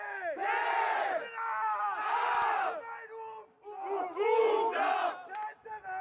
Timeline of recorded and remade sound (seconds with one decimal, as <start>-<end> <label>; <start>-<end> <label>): 0.0-6.0 recorded